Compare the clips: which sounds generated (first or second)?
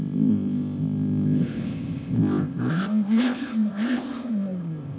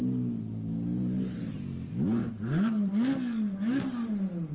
first